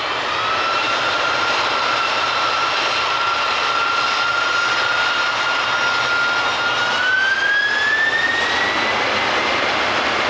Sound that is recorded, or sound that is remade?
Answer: recorded